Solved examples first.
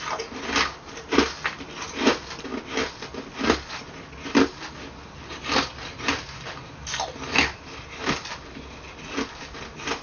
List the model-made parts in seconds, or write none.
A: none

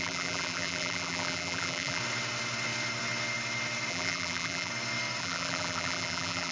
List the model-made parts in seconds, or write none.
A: 0.0-2.0; 3.9-4.7; 5.2-6.5

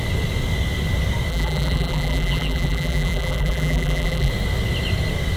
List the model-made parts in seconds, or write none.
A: 1.3-4.3

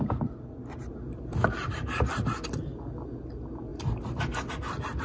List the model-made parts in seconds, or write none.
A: 1.4-2.0; 3.7-4.5

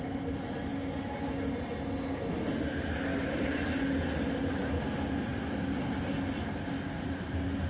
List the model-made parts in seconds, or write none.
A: none

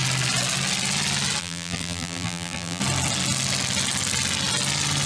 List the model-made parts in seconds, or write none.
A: 1.4-2.8